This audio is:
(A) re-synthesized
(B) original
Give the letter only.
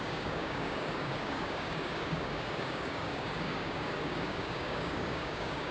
A